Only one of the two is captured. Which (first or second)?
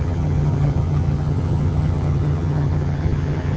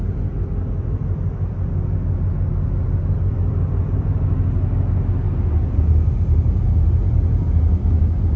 second